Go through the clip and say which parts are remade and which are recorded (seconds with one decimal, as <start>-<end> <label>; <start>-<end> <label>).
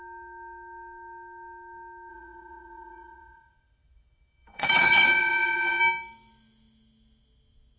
0.0-2.1 recorded; 2.1-5.8 remade; 5.8-7.8 recorded